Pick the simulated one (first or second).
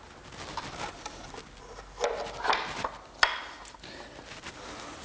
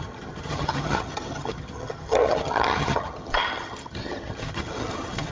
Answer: second